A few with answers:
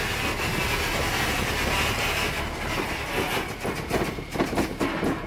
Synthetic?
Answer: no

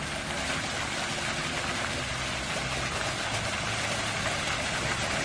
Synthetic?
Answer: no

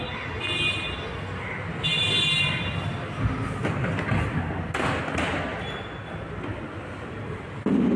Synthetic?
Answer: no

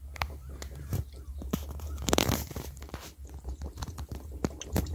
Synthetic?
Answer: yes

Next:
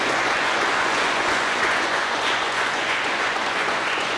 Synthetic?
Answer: yes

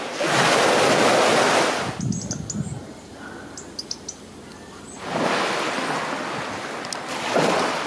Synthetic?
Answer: no